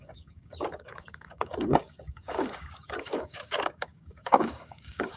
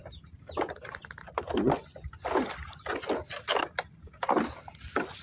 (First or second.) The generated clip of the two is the first